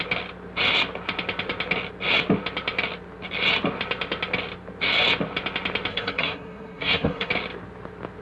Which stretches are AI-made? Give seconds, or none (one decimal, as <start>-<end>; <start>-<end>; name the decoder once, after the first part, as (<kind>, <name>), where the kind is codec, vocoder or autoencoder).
5.9-7.3 (codec, SNAC)